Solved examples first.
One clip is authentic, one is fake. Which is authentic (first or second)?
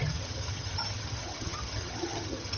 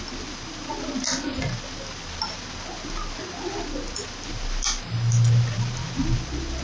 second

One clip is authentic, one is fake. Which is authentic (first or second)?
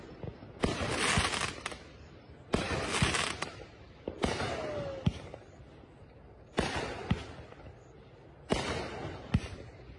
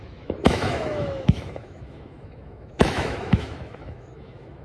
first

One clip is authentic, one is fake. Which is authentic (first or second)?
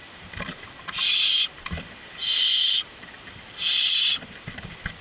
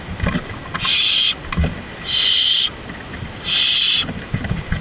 second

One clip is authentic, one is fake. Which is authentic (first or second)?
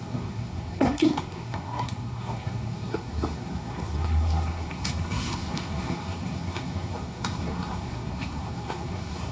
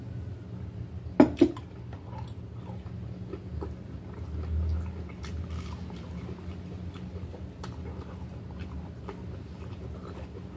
second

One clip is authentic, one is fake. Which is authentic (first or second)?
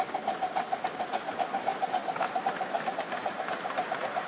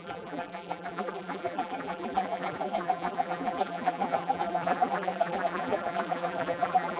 first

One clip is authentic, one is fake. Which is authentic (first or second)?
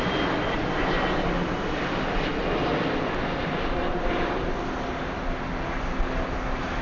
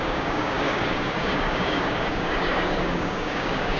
first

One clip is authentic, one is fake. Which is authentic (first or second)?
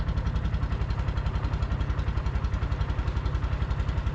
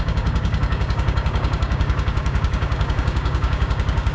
first